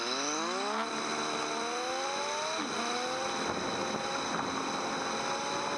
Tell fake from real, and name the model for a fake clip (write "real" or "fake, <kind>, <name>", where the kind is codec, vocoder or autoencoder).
real